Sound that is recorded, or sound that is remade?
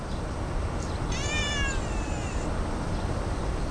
remade